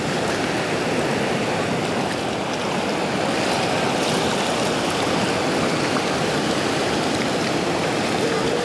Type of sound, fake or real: real